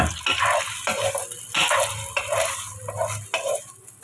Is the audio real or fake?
real